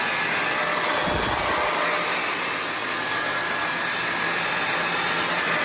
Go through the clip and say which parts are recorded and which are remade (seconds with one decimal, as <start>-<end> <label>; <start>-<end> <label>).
0.0-5.6 recorded